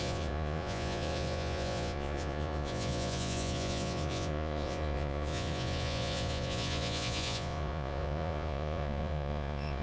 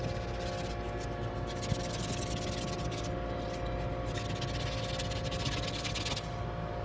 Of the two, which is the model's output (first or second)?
first